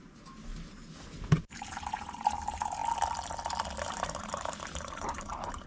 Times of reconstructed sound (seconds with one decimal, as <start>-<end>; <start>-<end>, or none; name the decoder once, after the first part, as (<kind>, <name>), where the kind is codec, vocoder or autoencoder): 0.0-0.5 (vocoder, BigVGAN v2); 1.4-2.8; 3.9-5.7